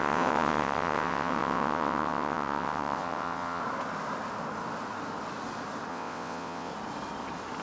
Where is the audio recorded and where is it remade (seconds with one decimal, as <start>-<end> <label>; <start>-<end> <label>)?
0.0-3.6 remade; 3.6-5.9 recorded; 5.9-6.7 remade; 6.7-7.6 recorded